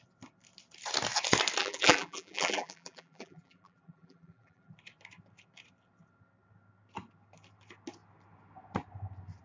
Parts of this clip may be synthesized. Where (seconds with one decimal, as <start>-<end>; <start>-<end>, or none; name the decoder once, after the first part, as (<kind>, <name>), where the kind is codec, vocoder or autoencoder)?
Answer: 1.6-4.7 (vocoder, BigVGAN v2)